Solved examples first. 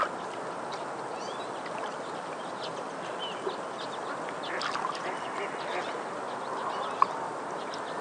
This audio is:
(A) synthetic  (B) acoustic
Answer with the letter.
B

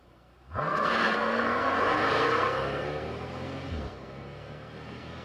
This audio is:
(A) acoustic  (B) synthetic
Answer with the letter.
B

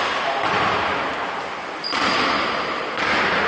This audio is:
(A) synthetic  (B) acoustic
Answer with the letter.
B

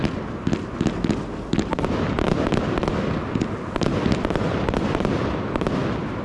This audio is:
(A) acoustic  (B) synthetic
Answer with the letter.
A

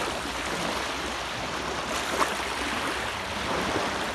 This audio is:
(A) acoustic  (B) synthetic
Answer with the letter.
A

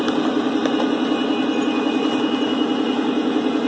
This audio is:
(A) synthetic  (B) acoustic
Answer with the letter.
B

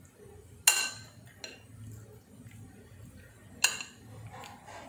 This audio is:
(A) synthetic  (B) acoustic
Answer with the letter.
B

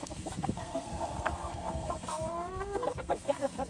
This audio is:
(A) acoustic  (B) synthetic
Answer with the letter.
B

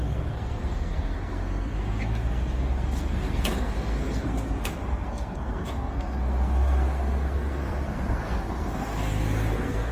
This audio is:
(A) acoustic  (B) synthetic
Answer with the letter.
B